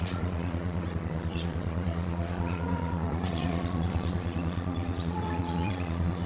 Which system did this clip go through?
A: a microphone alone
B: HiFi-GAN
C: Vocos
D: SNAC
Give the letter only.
C